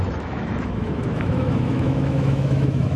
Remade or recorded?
remade